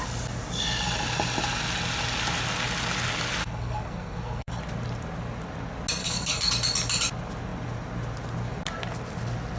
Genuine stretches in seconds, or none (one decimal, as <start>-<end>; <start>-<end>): 0.0-3.4; 4.6-6.0; 6.5-9.6